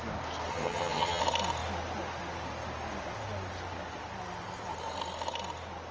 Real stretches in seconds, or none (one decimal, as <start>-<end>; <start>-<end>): 0.0-0.5; 1.2-5.9